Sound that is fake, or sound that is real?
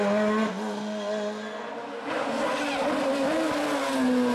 real